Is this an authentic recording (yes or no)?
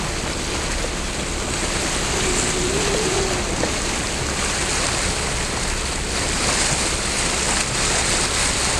yes